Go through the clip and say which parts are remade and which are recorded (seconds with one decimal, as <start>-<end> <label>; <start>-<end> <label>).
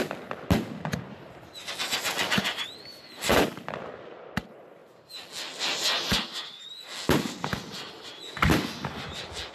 0.0-9.5 recorded